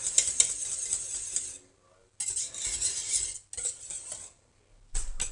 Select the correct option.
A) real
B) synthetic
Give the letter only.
A